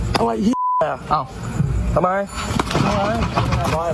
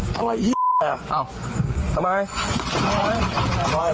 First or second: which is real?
first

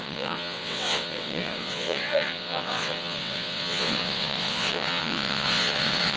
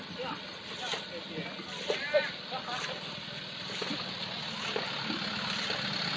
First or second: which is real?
second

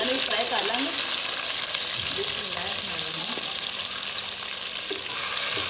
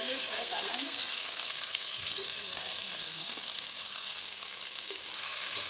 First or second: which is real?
first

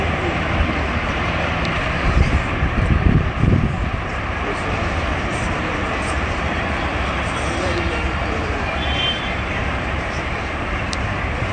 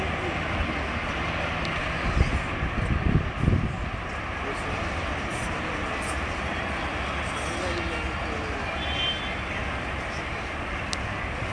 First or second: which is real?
second